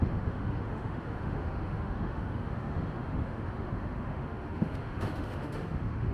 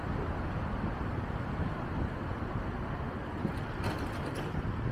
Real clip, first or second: second